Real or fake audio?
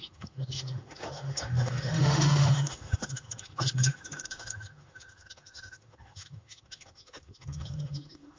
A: fake